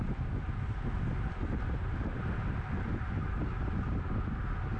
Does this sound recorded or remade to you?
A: recorded